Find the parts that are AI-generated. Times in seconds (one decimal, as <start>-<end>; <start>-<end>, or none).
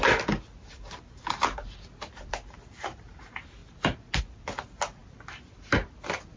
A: none